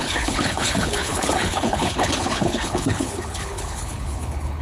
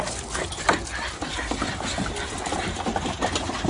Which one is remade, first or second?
first